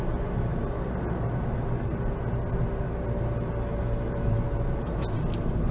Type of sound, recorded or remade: recorded